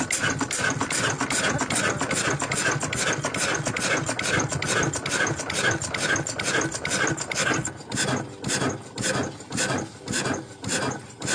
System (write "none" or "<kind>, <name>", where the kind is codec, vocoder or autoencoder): none